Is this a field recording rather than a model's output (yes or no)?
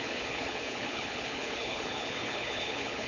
no